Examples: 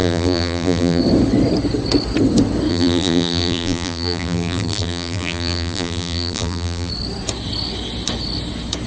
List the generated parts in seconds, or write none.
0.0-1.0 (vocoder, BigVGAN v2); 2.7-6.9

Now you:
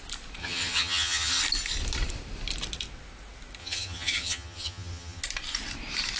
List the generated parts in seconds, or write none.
0.4-1.4 (vocoder, HiFi-GAN); 3.6-5.2

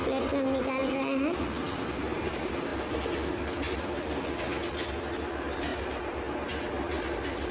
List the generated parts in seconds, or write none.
5.7-6.2 (vocoder, BigVGAN v2)

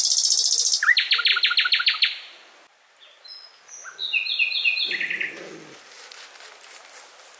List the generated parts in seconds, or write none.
none